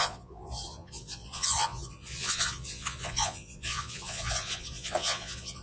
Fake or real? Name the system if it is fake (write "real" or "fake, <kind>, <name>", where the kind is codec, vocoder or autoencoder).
fake, vocoder, Vocos